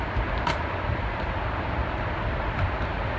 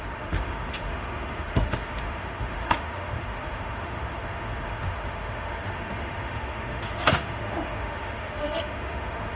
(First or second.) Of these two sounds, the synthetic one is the second